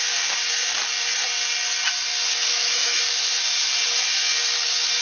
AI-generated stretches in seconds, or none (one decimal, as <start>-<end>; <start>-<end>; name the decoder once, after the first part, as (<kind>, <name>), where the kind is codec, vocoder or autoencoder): 2.4-3.0 (autoencoder, DAC-VAE)